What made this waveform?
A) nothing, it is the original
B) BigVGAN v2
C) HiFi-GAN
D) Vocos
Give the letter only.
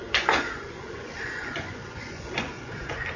D